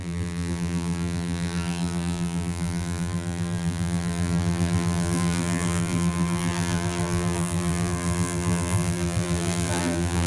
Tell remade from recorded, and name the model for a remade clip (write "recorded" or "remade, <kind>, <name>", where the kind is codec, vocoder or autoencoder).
remade, vocoder, BigVGAN v2